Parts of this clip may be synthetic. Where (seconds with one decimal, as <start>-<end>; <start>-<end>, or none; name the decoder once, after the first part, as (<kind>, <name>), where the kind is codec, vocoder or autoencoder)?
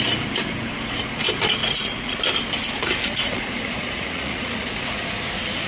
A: 1.6-2.2 (vocoder, Vocos); 2.8-5.0